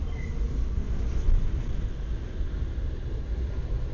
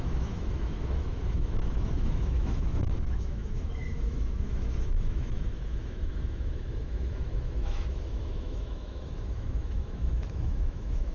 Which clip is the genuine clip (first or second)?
first